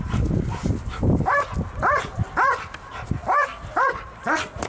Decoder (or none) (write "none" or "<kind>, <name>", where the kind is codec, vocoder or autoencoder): none